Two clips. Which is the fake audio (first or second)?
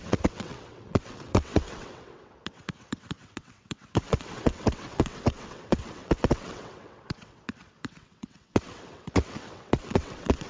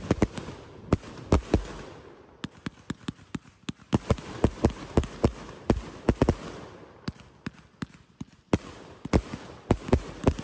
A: first